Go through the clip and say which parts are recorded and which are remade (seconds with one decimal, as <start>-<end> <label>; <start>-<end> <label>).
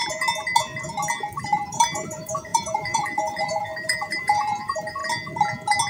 0.0-1.7 recorded; 1.7-5.0 remade; 5.0-5.9 recorded